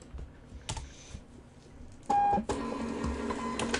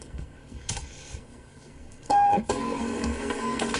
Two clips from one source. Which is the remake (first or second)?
second